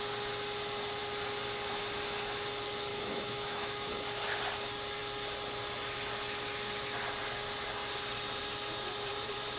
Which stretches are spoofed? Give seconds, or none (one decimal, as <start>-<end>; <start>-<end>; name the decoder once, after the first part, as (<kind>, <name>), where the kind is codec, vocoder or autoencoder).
2.9-3.9 (autoencoder, DAC-VAE)